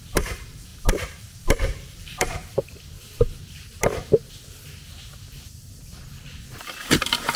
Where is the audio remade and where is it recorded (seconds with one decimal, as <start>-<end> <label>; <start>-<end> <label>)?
0.0-2.4 remade; 2.4-6.8 recorded; 6.8-7.4 remade